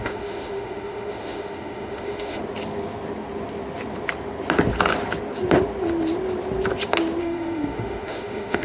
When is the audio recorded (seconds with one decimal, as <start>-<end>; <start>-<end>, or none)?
2.4-7.2